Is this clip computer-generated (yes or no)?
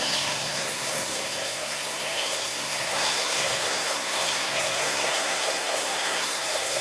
yes